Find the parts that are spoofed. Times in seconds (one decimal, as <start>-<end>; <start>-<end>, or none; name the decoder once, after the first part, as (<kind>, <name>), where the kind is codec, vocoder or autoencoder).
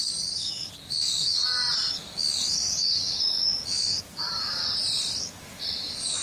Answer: 0.0-1.4 (codec, DAC); 1.9-4.6; 5.2-6.2